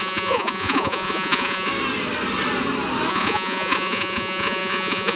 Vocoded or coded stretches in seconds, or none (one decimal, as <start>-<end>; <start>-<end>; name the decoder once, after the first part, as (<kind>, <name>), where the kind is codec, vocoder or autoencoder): 0.0-1.7 (vocoder, Vocos); 3.1-5.2